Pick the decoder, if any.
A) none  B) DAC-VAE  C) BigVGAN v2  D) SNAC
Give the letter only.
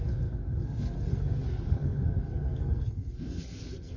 D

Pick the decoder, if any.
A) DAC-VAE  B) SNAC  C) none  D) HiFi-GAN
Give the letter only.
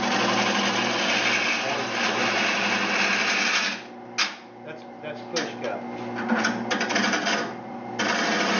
C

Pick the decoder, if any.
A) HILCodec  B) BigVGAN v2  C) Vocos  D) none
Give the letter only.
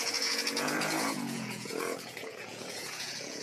C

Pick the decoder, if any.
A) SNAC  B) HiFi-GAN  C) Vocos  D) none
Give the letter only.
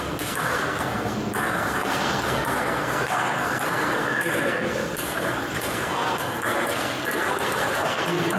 A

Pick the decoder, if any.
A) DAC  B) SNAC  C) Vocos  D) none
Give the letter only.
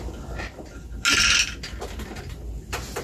D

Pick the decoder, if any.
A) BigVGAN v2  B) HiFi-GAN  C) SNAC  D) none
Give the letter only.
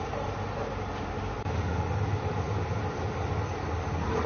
D